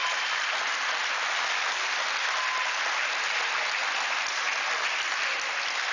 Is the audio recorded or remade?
recorded